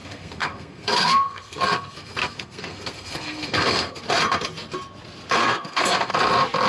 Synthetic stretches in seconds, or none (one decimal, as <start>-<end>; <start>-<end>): 0.0-4.0; 5.4-6.1